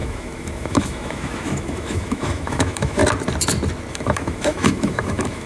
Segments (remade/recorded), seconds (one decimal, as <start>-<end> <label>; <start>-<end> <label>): 0.0-3.0 remade; 3.0-3.9 recorded; 3.9-5.5 remade